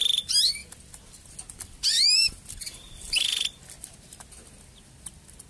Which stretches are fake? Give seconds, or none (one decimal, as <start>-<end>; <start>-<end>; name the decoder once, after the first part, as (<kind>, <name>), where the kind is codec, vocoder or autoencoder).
0.6-3.9 (vocoder, BigVGAN v2)